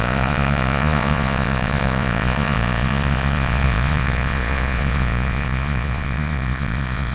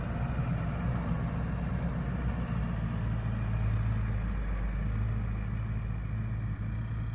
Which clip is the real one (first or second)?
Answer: second